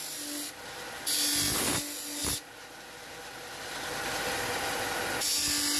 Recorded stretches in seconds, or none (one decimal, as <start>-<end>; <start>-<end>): 0.0-5.8